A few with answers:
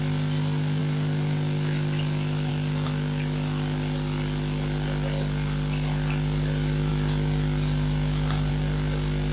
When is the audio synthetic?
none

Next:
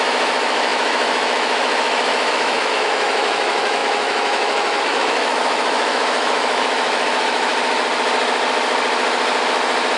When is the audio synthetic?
0.0-7.5 (autoencoder, DAC-VAE)

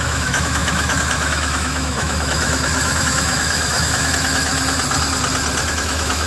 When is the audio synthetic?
0.0-4.5 (autoencoder, DAC-VAE); 5.7-6.3

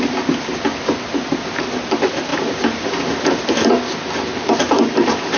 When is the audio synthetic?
none

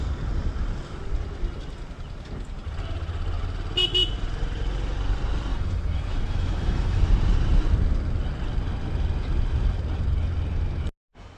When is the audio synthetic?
5.5-7.0 (autoencoder, DAC-VAE)

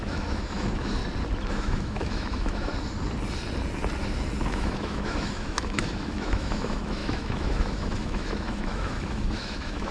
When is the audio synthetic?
0.0-1.0 (autoencoder, DAC-VAE); 1.5-2.7; 4.5-9.9